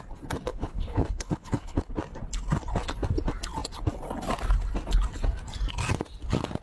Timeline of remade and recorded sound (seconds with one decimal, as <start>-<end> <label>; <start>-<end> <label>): 0.0-0.5 recorded; 0.5-1.9 remade; 1.9-6.6 recorded